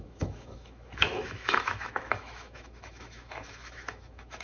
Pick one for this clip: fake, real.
fake